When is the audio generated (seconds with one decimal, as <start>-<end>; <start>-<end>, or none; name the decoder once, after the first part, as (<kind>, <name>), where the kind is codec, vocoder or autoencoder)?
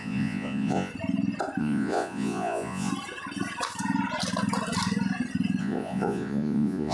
0.0-0.9 (vocoder, Vocos); 1.6-2.9; 5.6-6.9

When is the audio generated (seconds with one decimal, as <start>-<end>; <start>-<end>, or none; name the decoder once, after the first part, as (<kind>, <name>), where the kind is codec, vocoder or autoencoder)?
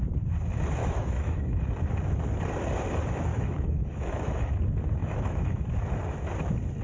0.8-1.6 (autoencoder, DAC-VAE); 3.3-4.5; 5.0-5.7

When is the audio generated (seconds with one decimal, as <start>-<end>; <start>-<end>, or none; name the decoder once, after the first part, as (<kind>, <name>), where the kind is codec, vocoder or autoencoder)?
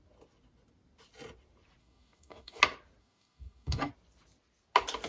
1.8-2.6 (codec, DAC); 3.0-3.9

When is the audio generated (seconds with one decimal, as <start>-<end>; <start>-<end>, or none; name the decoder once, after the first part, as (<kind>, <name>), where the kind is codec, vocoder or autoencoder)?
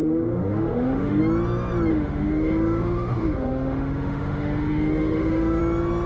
0.0-1.2 (autoencoder, DAC-VAE); 1.9-5.6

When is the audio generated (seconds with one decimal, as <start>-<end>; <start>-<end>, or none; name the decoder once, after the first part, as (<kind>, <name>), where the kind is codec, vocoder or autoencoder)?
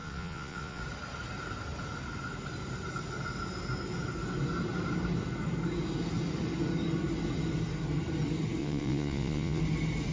0.0-0.8 (vocoder, Vocos); 8.6-9.6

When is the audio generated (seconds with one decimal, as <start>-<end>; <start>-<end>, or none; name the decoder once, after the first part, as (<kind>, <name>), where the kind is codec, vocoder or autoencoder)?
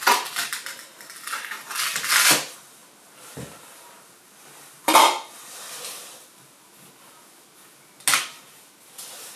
none